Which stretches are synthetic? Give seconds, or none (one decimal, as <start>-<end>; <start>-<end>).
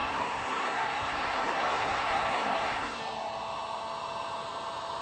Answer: 0.0-3.0